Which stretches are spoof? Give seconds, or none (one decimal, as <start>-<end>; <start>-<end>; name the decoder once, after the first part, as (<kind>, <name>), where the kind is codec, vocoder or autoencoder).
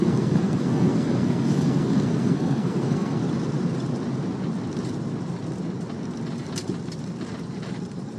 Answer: 0.0-3.2 (codec, SNAC)